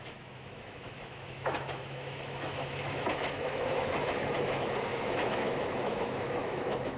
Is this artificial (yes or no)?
yes